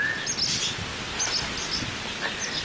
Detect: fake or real real